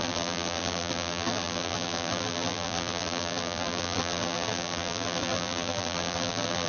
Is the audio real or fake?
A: fake